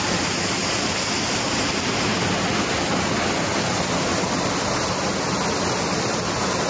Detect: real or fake real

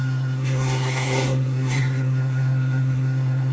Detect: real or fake fake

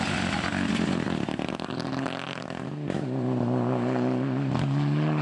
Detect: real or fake real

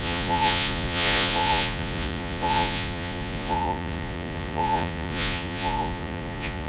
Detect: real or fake fake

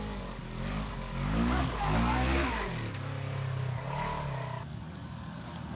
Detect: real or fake fake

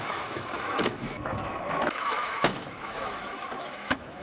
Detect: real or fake fake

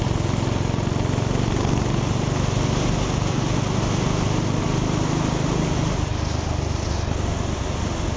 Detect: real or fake real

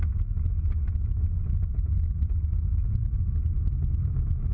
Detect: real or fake real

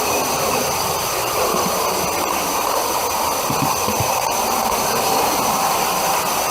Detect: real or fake real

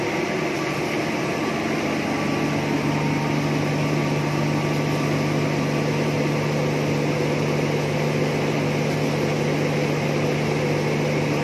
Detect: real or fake real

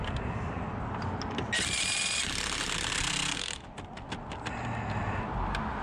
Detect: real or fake real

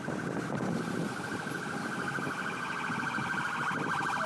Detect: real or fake real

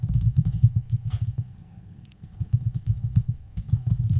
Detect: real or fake fake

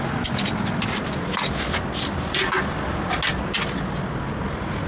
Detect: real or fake real